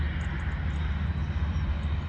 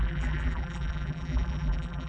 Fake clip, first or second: second